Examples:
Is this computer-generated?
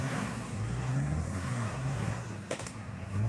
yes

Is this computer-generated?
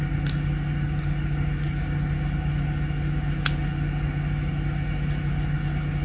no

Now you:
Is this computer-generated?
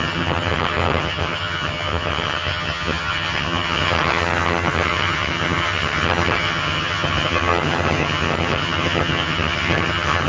yes